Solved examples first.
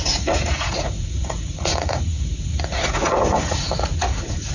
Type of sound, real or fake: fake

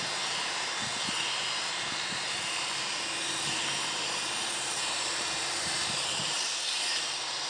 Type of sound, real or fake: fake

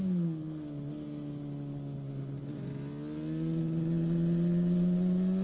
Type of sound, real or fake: real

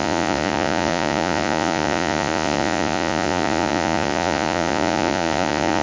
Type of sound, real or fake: fake